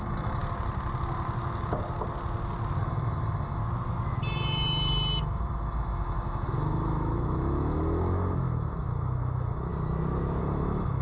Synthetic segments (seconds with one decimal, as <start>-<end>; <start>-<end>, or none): 0.0-0.4; 2.8-3.6; 5.2-9.7; 10.4-11.0